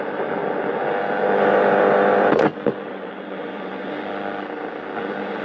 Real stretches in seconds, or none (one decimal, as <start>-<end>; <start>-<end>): 0.0-2.9; 3.9-5.4